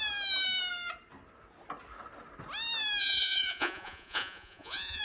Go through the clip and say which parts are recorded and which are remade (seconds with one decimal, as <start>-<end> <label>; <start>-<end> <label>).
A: 0.0-3.0 recorded; 3.0-5.0 remade